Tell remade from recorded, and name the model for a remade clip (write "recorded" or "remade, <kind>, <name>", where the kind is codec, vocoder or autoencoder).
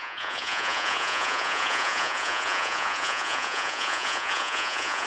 remade, vocoder, Vocos